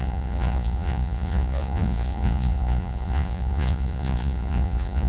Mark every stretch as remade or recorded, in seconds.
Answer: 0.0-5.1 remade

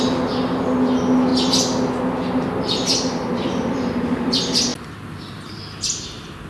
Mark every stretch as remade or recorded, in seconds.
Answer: 0.0-6.5 recorded